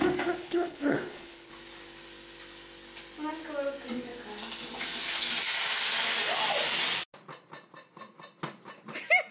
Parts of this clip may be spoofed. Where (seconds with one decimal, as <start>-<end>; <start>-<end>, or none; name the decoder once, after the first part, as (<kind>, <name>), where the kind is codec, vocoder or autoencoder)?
0.4-1.5 (codec, HILCodec)